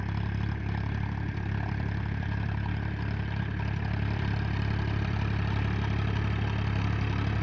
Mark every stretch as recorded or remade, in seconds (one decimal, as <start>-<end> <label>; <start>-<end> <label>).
0.0-2.7 remade; 2.7-3.4 recorded; 3.4-7.4 remade